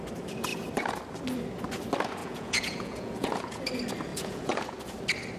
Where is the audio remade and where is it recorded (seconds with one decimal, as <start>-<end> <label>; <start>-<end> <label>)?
0.0-2.2 recorded; 2.2-3.6 remade; 3.6-4.1 recorded; 4.1-4.8 remade; 4.8-5.4 recorded

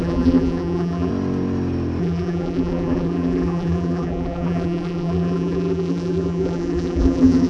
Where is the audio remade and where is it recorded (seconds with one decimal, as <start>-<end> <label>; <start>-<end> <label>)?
0.0-1.1 remade; 1.1-2.0 recorded; 2.0-7.5 remade

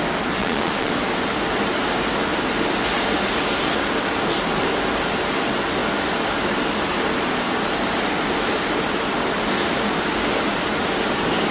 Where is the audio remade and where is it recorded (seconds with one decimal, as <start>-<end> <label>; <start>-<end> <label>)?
0.0-0.4 recorded; 0.4-0.9 remade; 0.9-11.5 recorded

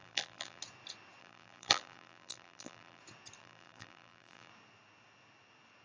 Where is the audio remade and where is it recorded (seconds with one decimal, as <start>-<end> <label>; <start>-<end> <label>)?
0.0-0.6 remade; 0.6-1.2 recorded; 1.2-3.0 remade; 3.0-3.4 recorded; 3.4-4.5 remade; 4.5-5.8 recorded

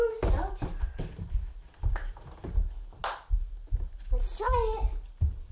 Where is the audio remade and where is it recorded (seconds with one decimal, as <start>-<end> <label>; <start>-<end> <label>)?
0.0-5.5 recorded